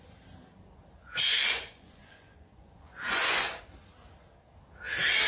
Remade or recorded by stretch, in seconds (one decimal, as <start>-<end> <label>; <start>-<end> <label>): 0.0-1.0 recorded; 1.0-3.6 remade; 3.6-5.3 recorded